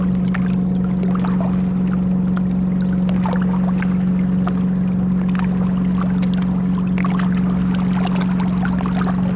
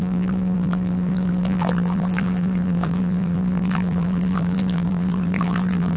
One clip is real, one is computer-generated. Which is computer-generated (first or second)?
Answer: second